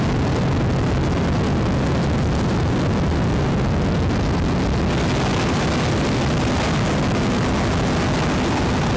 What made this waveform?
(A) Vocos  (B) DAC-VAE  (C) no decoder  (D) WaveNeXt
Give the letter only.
C